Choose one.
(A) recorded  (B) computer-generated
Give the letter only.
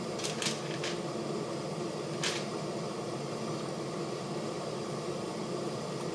A